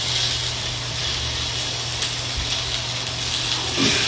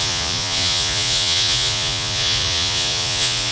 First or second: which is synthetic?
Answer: second